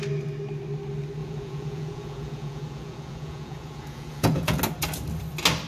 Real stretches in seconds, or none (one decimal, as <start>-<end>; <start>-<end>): 0.0-1.2; 4.6-5.7